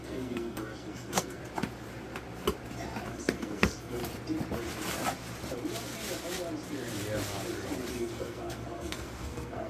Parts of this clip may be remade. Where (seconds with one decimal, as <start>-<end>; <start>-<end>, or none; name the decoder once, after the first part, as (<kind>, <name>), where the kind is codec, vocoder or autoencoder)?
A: 0.0-1.4 (codec, SNAC); 3.1-4.0; 7.9-9.7